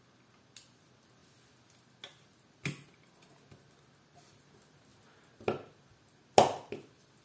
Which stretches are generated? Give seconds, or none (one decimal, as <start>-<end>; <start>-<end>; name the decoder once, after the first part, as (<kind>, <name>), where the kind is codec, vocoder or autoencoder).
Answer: none